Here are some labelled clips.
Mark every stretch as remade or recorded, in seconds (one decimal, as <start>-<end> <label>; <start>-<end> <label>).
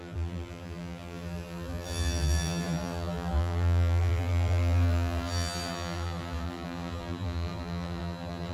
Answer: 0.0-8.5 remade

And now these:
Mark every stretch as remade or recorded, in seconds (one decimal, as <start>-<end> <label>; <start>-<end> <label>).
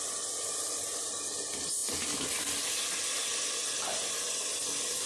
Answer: 0.0-5.1 recorded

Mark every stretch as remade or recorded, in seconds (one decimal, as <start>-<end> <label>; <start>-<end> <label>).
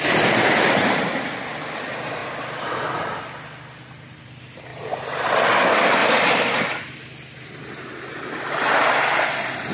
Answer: 0.0-4.7 recorded; 4.7-5.4 remade; 5.4-6.0 recorded; 6.0-6.8 remade; 6.8-9.7 recorded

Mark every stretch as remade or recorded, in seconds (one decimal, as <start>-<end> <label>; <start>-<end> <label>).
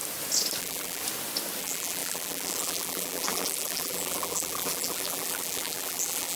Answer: 0.0-0.6 recorded; 0.6-1.0 remade; 1.0-1.6 recorded; 1.6-6.4 remade